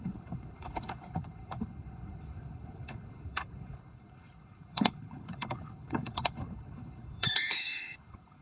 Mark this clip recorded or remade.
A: remade